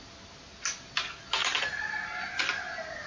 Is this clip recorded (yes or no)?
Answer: yes